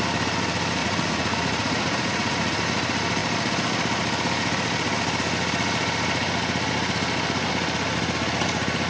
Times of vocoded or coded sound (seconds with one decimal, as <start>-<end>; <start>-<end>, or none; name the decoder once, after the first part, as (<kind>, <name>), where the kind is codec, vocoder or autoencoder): 0.8-2.6 (vocoder, Vocos)